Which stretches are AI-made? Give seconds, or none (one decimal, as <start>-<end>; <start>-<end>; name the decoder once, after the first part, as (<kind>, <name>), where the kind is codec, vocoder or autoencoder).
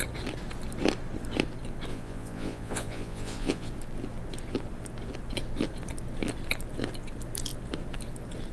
1.9-3.7 (vocoder, Vocos)